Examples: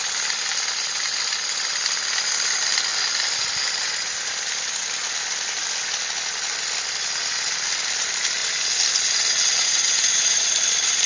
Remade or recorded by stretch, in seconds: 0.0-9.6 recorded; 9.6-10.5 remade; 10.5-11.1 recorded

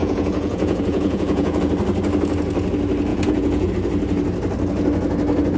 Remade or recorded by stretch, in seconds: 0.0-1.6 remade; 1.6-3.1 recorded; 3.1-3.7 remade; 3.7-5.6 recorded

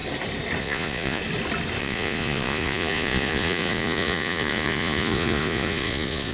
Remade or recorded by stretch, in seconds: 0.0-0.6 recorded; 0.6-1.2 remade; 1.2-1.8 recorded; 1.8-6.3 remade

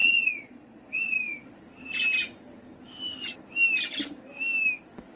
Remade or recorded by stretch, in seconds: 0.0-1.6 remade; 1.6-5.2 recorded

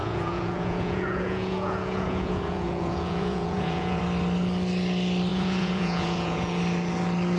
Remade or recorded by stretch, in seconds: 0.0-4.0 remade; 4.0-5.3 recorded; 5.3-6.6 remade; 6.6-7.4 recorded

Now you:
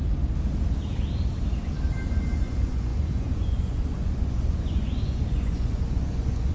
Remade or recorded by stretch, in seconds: 0.0-2.4 recorded; 2.4-6.5 remade

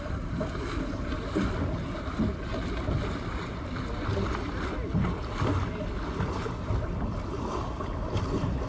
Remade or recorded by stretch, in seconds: 0.0-8.7 recorded